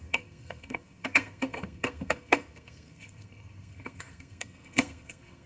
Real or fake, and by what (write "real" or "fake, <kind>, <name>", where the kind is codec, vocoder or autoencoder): fake, codec, SNAC